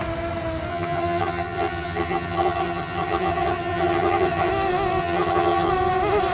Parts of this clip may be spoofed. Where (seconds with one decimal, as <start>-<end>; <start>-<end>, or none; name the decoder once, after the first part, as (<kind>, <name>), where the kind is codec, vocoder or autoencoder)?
0.7-4.5 (vocoder, HiFi-GAN); 5.0-5.7